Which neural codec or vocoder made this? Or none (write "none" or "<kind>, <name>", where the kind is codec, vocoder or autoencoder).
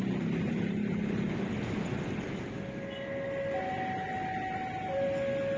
none